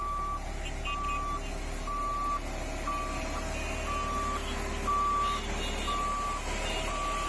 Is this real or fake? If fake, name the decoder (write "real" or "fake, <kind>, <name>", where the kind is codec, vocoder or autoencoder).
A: real